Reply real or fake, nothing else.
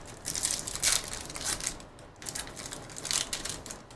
real